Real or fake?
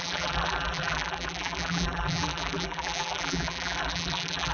fake